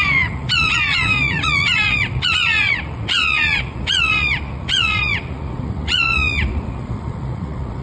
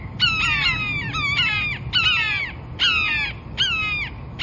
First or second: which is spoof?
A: first